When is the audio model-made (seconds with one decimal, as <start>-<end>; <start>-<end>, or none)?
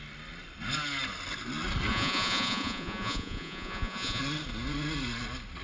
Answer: 1.9-4.2